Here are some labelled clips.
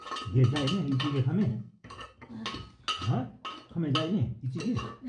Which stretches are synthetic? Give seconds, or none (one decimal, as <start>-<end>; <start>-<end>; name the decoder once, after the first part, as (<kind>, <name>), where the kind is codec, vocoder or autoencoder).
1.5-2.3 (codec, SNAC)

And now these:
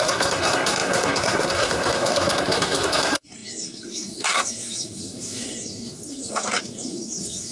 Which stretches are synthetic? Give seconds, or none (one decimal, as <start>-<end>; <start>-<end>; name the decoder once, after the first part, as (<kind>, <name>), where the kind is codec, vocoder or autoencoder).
0.0-7.5 (codec, SNAC)

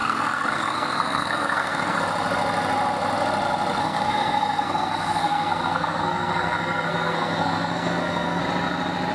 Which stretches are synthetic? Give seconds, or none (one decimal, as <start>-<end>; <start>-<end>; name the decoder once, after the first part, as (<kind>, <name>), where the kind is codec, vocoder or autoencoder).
0.0-2.0 (codec, SNAC); 3.8-8.4

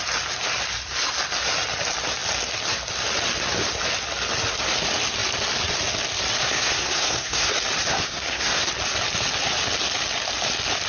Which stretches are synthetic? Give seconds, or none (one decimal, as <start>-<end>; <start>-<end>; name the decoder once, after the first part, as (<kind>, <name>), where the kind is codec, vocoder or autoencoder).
6.4-7.5 (codec, SNAC); 7.9-8.7

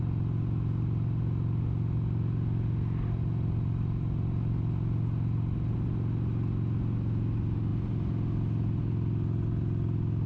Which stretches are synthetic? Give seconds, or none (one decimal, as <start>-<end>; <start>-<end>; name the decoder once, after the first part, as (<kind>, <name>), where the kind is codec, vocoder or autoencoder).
none

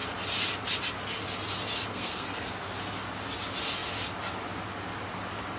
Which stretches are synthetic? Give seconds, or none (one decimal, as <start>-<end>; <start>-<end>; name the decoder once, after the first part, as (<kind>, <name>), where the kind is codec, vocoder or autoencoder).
1.9-2.7 (codec, SNAC)